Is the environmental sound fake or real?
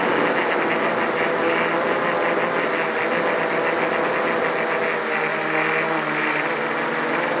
real